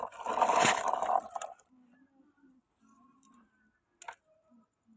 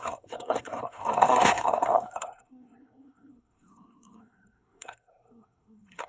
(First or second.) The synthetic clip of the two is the second